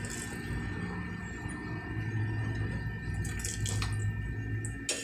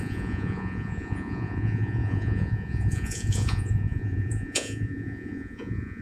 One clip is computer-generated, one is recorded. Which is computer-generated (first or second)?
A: second